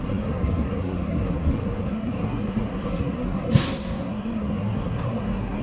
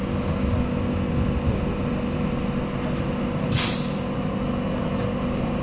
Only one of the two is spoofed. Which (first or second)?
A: first